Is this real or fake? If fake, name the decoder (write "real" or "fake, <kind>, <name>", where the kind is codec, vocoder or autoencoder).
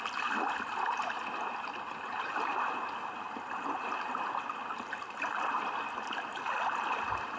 real